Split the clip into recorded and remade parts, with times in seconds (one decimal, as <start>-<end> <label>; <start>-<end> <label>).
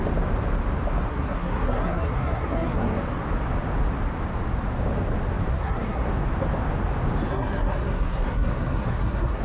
0.0-1.1 recorded; 1.1-3.0 remade; 3.0-5.5 recorded; 5.5-6.1 remade; 6.1-7.3 recorded; 7.3-9.4 remade